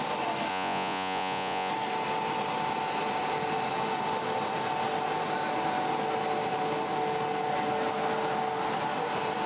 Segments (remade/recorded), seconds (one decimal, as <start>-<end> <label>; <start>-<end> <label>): 0.0-0.5 recorded; 0.5-1.7 remade; 1.7-9.5 recorded